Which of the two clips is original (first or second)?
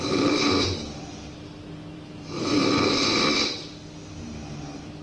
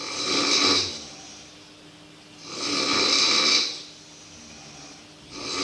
second